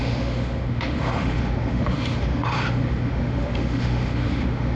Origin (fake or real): fake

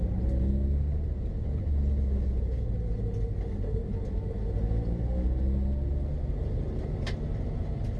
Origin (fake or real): real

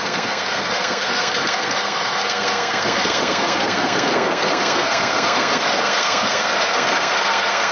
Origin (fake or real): fake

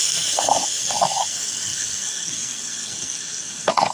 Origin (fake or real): fake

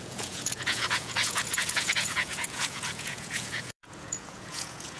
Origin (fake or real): fake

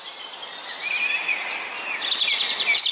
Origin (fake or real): real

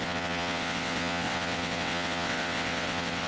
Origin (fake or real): fake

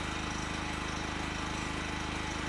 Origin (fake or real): real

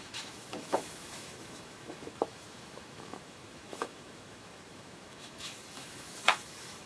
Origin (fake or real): fake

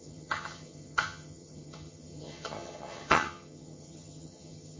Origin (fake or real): fake